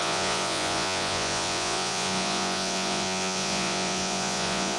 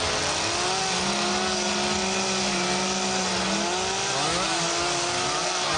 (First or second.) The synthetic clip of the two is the first